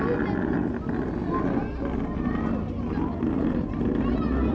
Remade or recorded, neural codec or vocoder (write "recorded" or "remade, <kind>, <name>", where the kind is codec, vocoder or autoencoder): recorded